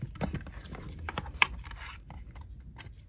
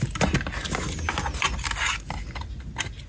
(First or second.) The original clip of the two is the second